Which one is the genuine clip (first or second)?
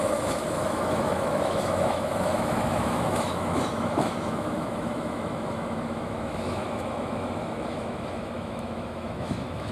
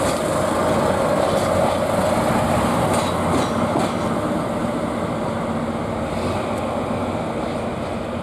second